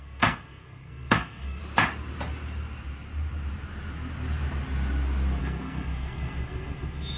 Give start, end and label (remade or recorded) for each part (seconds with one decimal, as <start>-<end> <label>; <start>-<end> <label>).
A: 0.0-1.6 remade; 1.6-5.4 recorded; 5.4-7.2 remade